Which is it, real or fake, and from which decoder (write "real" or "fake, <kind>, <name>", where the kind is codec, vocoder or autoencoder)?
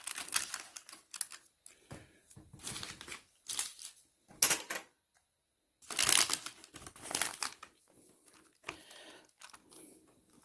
real